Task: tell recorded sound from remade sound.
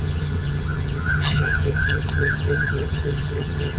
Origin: remade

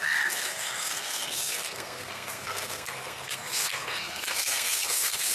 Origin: remade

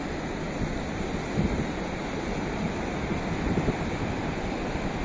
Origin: recorded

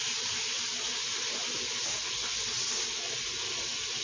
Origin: recorded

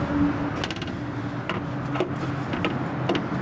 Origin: recorded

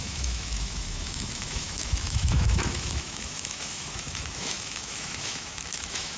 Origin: remade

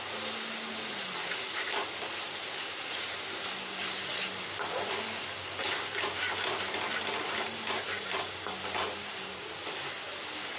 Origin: recorded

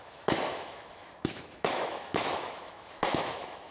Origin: remade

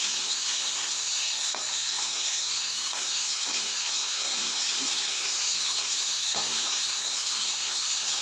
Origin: remade